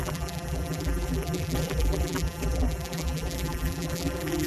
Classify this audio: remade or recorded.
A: remade